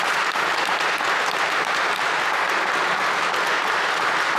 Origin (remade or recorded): recorded